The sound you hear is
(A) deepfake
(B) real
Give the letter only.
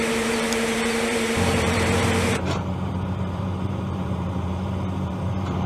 A